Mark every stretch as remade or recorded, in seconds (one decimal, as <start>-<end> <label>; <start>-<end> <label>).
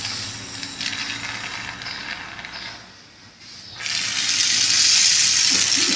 0.0-6.0 recorded